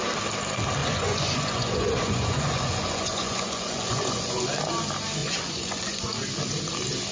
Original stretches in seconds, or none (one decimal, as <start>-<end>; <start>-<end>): 0.0-0.8; 4.4-5.2; 6.0-7.1